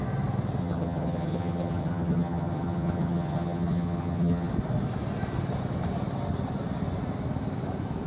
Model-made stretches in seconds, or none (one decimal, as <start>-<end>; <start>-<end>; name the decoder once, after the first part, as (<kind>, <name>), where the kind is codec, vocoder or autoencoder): 0.6-4.5 (vocoder, HiFi-GAN)